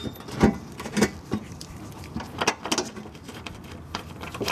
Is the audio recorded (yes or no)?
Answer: yes